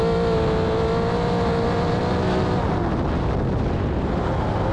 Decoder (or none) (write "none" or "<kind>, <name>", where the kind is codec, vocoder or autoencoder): none